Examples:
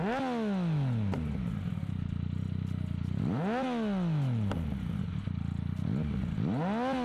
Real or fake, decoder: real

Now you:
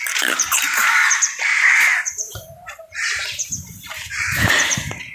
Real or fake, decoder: fake, vocoder, BigVGAN v2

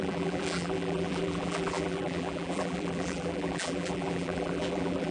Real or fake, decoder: fake, vocoder, BigVGAN v2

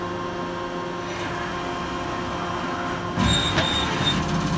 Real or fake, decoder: real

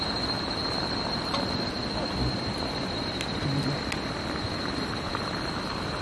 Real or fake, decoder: real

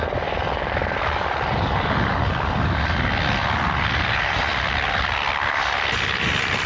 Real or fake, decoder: real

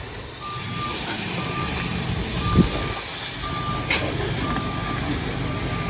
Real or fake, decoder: real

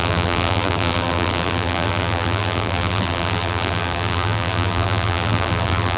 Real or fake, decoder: fake, vocoder, BigVGAN v2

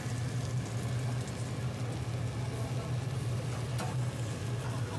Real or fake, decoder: real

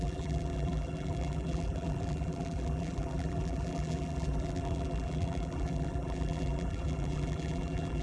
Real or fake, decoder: fake, vocoder, BigVGAN v2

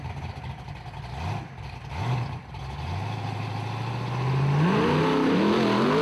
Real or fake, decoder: real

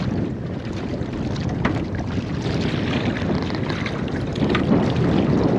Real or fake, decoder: real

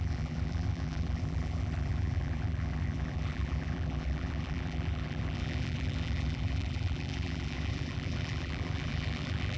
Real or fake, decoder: fake, vocoder, BigVGAN v2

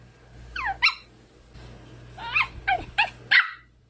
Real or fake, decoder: real